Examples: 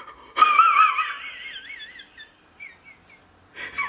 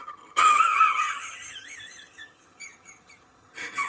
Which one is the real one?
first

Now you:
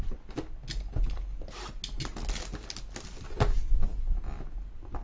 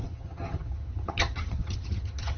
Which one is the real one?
first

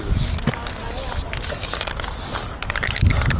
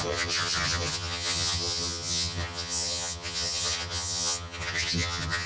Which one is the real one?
first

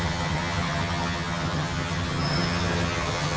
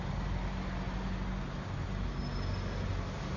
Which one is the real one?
second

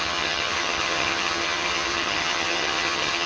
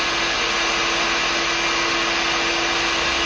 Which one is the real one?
second